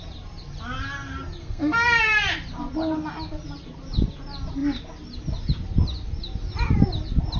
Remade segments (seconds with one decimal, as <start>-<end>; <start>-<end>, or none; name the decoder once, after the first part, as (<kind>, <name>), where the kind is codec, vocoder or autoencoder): 1.4-2.0 (codec, SNAC)